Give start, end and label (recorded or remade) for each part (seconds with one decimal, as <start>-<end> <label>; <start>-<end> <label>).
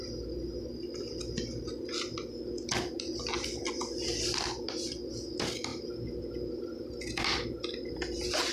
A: 0.0-8.5 recorded